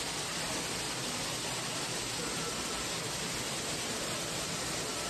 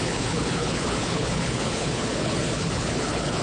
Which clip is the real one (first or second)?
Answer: first